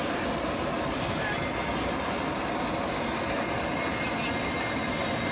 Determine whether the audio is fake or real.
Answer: real